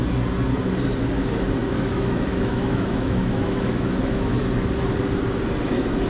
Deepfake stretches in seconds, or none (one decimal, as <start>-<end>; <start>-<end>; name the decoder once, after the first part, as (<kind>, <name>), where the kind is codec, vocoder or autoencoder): 1.6-4.4 (autoencoder, DAC-VAE)